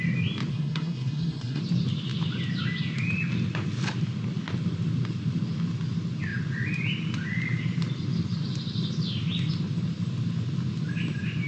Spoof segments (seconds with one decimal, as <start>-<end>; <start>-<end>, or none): 0.5-1.6